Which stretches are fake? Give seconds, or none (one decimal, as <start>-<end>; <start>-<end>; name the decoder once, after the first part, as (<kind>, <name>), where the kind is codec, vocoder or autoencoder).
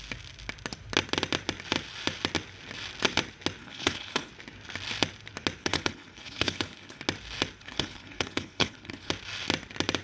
3.6-4.3 (codec, HILCodec); 5.6-7.0; 7.6-9.1